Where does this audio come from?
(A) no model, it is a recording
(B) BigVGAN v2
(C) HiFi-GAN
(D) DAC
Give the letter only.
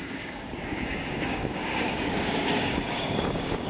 D